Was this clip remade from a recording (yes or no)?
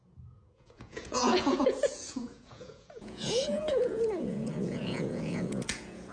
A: yes